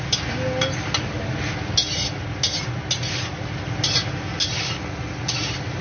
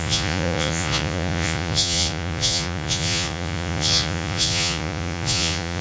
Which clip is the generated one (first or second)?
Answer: second